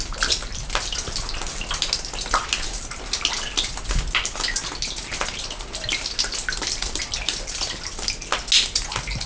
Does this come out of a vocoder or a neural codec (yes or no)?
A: no